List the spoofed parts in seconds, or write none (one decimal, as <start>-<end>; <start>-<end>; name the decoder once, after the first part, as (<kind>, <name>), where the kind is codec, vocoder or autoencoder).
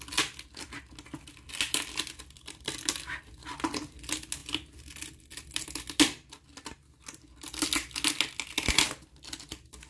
none